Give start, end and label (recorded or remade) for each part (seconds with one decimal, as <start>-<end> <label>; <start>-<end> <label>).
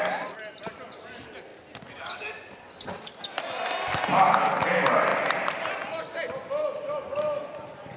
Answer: 0.0-8.0 recorded